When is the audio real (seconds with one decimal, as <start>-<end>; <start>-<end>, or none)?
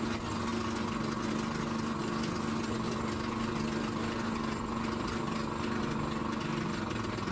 0.0-7.3